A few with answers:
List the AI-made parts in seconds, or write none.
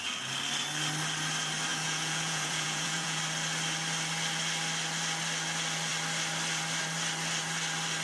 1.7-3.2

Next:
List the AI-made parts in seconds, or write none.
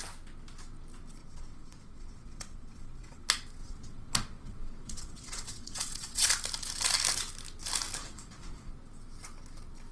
1.2-3.2; 3.6-6.3; 8.0-8.7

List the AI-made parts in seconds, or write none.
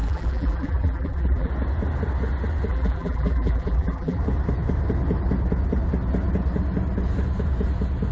0.0-1.5; 2.7-4.2